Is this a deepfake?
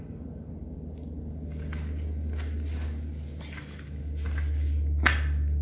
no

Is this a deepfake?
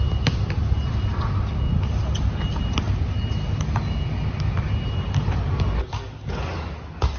no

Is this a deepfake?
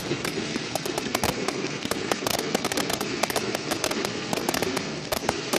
yes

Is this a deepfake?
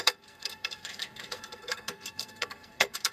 yes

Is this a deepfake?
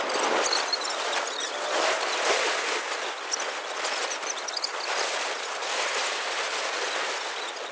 no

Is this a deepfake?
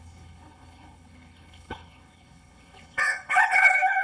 yes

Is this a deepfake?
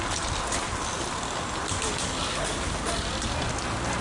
no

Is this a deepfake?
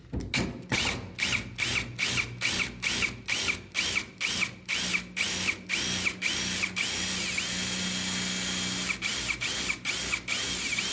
no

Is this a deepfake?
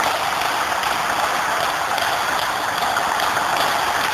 no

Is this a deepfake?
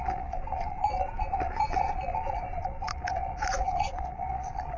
yes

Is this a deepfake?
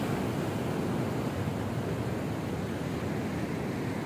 no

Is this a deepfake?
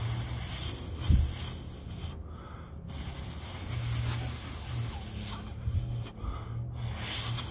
no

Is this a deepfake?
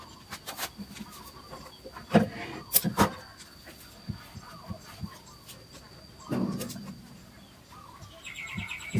no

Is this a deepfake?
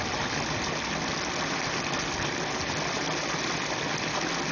no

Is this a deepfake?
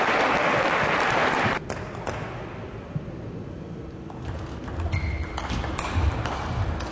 no